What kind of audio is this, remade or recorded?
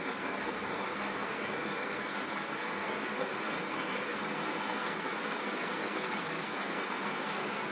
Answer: remade